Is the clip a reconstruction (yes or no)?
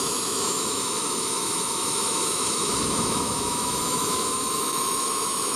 yes